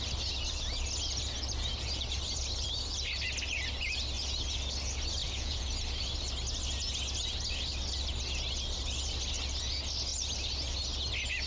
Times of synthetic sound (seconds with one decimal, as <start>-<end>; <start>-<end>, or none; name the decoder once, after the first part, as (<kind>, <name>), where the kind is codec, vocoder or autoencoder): 5.2-5.7 (vocoder, Vocos)